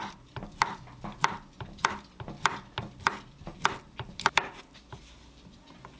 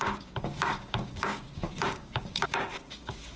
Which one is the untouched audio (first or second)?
first